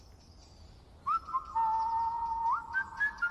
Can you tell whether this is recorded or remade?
recorded